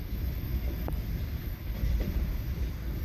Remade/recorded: recorded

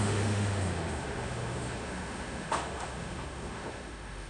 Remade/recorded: remade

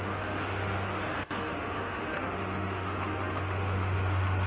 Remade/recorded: remade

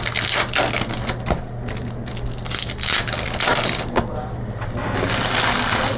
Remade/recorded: recorded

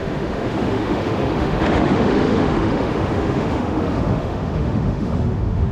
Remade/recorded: remade